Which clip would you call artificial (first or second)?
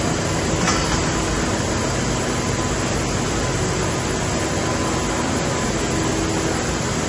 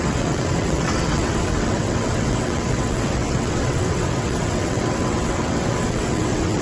second